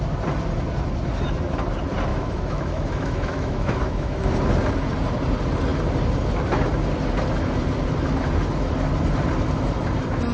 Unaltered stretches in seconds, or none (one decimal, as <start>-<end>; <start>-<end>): 0.0-2.1; 4.3-10.3